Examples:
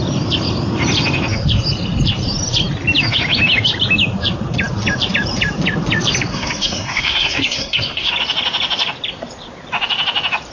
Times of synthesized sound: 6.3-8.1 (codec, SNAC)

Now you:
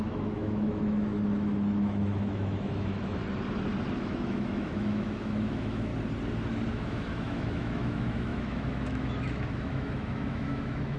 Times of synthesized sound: 0.0-3.2 (autoencoder, DAC-VAE); 4.0-5.9; 6.7-11.0